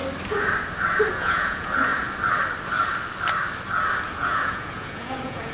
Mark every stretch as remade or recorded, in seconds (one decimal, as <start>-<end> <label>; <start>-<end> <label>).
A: 0.0-1.1 recorded; 1.1-1.9 remade; 1.9-4.1 recorded; 4.1-5.5 remade